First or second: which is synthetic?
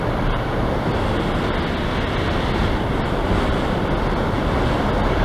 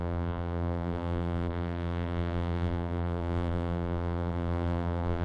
second